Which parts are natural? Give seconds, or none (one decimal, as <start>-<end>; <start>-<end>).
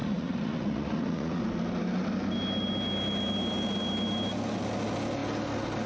1.4-5.9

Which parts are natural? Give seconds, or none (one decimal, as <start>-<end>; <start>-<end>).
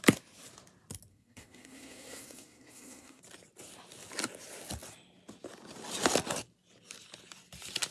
0.0-1.1; 3.2-7.9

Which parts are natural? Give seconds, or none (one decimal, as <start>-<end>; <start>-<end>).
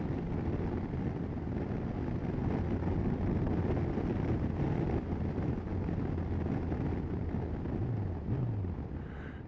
0.0-9.5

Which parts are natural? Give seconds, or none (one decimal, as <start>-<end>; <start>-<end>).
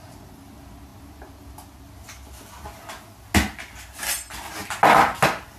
0.0-5.6